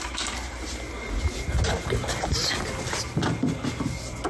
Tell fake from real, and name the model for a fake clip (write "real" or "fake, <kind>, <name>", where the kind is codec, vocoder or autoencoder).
real